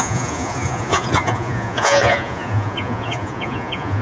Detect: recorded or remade remade